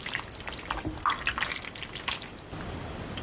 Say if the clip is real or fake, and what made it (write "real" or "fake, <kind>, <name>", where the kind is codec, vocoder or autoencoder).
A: real